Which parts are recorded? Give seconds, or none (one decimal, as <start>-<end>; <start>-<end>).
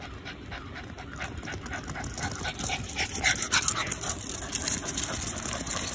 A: 0.0-5.9